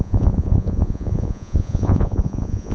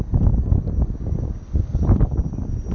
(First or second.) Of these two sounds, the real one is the second